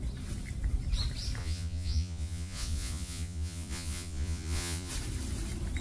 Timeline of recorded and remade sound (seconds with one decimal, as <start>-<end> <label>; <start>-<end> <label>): 0.0-1.4 recorded; 1.4-4.9 remade; 4.9-5.8 recorded